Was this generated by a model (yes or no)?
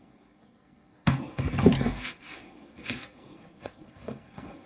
yes